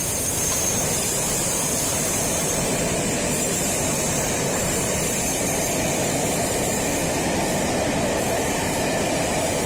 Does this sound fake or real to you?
fake